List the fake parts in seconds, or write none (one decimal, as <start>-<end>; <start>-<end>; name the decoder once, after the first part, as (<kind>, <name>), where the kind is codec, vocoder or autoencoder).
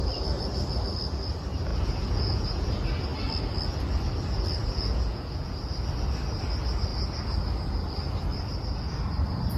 1.7-2.7 (vocoder, Vocos); 4.6-5.6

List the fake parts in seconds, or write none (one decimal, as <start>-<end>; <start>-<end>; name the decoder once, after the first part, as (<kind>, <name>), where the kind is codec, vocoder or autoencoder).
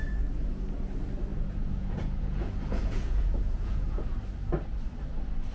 1.3-4.0 (vocoder, Vocos)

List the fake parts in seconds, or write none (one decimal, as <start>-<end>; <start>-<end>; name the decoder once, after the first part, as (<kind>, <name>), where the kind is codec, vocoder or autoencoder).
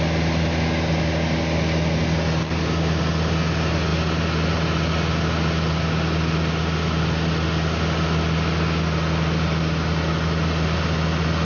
none